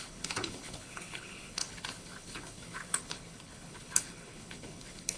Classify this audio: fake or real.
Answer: fake